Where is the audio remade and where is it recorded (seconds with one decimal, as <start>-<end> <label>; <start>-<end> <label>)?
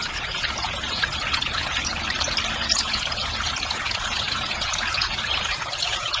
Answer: 0.0-1.9 remade; 1.9-2.5 recorded; 2.5-6.2 remade